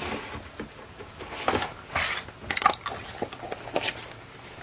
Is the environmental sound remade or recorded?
recorded